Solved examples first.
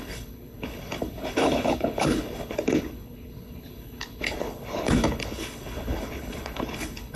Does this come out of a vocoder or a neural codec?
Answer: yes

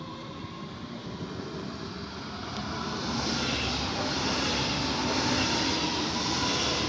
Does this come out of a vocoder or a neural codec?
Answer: no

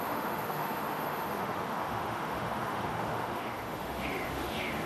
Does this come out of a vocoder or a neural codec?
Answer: yes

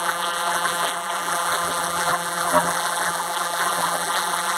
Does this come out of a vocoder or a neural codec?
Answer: yes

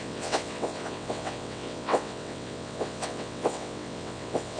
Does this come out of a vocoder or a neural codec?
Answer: yes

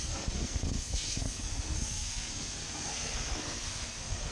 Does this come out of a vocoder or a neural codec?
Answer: yes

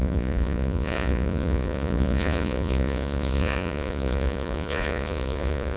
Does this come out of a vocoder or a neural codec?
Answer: yes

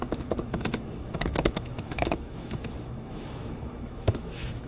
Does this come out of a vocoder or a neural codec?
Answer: yes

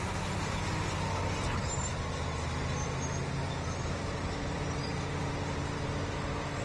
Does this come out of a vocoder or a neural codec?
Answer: no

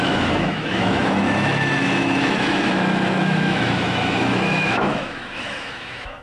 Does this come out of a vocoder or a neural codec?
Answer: yes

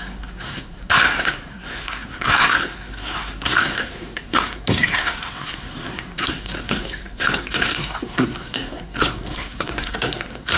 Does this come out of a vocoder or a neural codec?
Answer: yes